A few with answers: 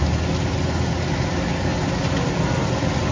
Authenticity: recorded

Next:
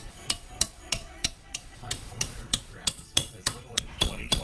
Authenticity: remade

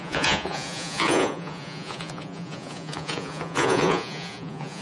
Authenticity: remade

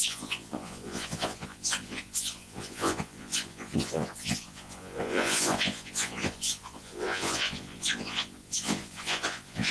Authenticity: remade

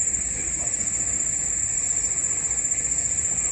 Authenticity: recorded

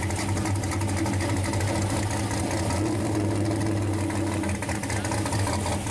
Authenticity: recorded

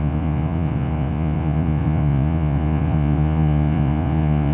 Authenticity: remade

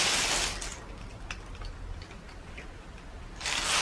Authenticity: recorded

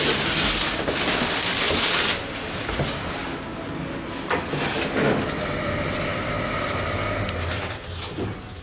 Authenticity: recorded